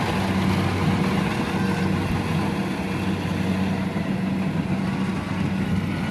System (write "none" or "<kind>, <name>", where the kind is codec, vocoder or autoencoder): none